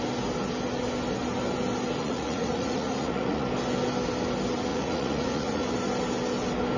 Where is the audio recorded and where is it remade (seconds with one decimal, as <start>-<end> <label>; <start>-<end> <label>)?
0.0-2.0 recorded; 2.0-3.5 remade; 3.5-4.7 recorded; 4.7-5.7 remade; 5.7-6.8 recorded